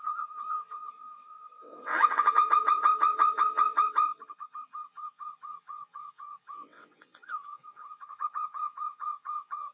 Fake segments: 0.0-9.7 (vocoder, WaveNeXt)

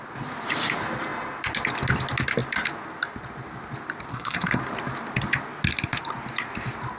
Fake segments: 4.1-4.6 (codec, SNAC)

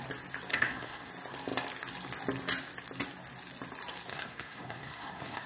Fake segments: 0.5-1.1 (codec, SNAC); 4.1-5.5

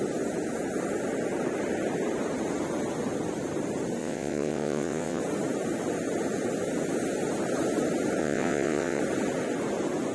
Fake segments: 4.0-5.2 (vocoder, WaveNeXt); 8.2-9.0

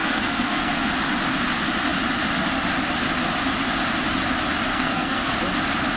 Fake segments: 0.0-0.9 (codec, SNAC); 4.7-5.3

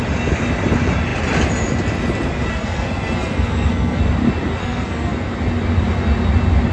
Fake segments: 2.5-4.0 (codec, SNAC); 4.6-5.3

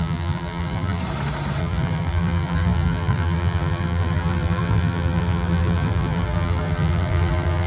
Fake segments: 0.0-1.0 (vocoder, BigVGAN v2); 1.6-7.7

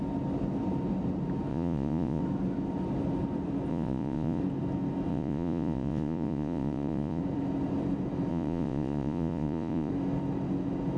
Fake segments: 1.5-2.2 (vocoder, Vocos); 3.7-4.4; 5.1-7.2; 8.3-9.9